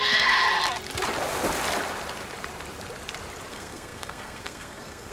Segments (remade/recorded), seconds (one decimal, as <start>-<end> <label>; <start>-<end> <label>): 0.0-0.4 remade; 0.4-3.5 recorded; 3.5-5.1 remade